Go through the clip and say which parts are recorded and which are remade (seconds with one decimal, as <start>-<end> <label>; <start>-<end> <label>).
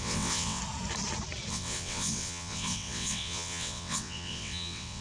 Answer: 0.0-0.6 remade; 0.6-1.5 recorded; 1.5-5.0 remade